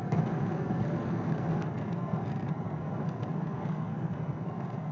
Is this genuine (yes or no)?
no